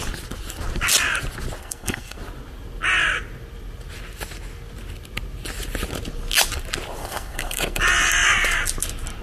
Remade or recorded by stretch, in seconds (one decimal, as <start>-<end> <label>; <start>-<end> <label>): 0.0-1.6 recorded; 1.6-2.2 remade; 2.2-7.0 recorded; 7.0-7.8 remade; 7.8-9.2 recorded